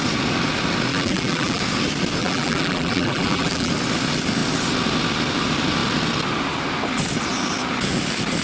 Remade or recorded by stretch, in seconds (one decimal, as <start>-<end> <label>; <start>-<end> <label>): 0.0-0.9 recorded; 0.9-1.6 remade; 1.6-2.2 recorded; 2.2-3.7 remade; 3.7-8.4 recorded